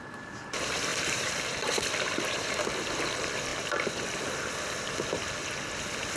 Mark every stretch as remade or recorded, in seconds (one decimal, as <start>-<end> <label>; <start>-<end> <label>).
0.0-0.9 recorded; 0.9-2.6 remade; 2.6-6.2 recorded